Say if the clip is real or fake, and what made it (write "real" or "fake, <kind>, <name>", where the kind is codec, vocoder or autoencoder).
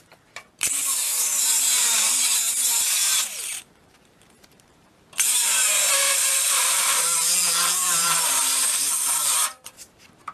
fake, vocoder, BigVGAN v2